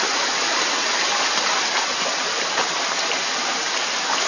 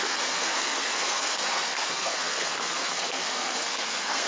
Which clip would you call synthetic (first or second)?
second